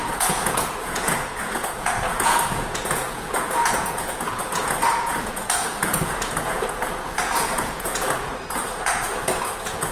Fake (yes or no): yes